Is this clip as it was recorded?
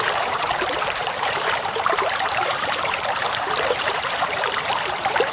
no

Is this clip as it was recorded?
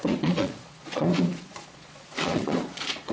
no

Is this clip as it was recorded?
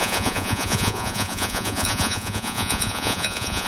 no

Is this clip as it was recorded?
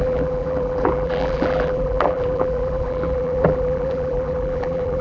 no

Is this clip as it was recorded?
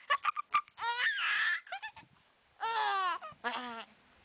yes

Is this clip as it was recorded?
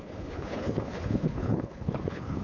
no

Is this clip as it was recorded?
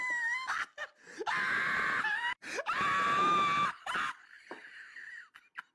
yes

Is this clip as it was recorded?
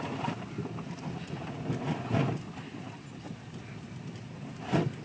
yes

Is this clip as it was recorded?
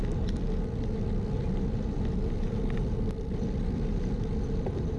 yes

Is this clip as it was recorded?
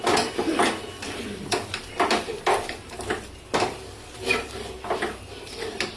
no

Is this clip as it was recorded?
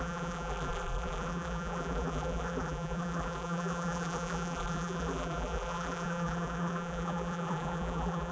no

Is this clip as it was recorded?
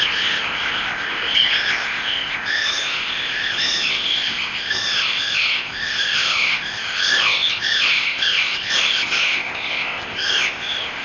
no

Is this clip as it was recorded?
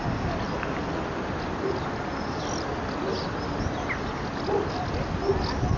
yes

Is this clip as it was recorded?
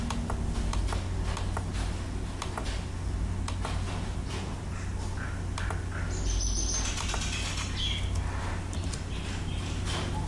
yes